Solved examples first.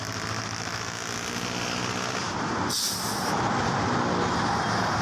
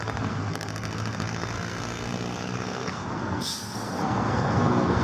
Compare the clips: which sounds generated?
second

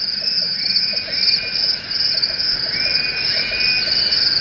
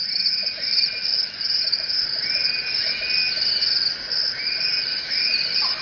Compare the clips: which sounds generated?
second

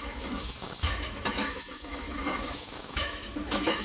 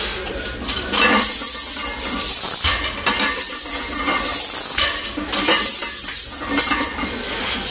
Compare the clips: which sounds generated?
first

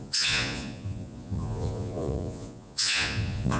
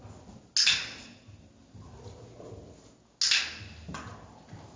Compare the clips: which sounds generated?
first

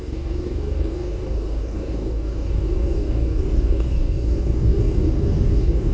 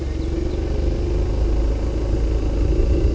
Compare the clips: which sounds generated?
first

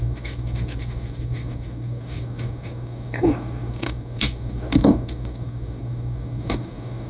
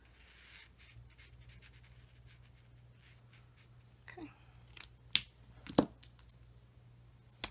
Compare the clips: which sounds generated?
first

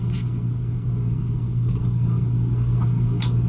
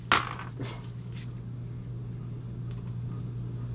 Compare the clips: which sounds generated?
first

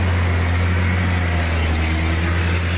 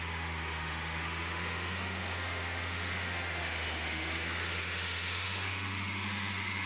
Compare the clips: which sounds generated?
second